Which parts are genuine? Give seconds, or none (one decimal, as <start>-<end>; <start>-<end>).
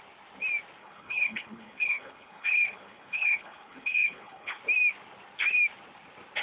0.0-0.8; 4.6-6.4